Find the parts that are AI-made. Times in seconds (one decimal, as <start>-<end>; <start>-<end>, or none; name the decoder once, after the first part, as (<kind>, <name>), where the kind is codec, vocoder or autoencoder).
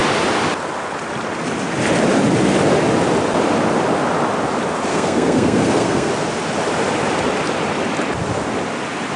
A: 4.9-6.1 (codec, SNAC)